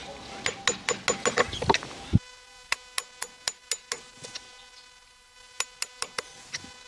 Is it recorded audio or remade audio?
recorded